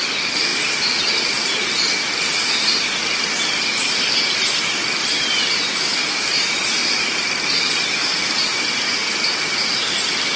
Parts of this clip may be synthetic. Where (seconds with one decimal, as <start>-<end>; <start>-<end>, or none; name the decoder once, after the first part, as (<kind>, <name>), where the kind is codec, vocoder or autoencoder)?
none